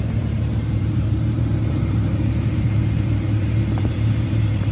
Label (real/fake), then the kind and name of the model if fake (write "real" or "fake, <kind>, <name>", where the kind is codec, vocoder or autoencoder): fake, vocoder, BigVGAN v2